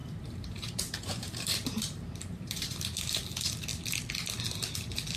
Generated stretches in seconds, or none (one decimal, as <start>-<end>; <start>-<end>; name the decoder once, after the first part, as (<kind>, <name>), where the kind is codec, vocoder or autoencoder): 0.0-3.1 (vocoder, BigVGAN v2)